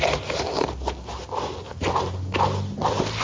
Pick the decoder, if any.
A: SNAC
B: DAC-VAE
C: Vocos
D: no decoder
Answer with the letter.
D